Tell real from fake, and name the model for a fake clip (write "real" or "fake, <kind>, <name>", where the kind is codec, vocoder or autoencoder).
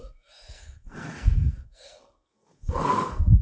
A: fake, codec, SNAC